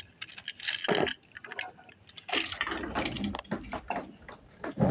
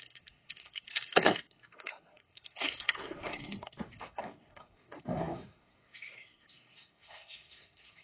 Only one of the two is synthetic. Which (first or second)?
second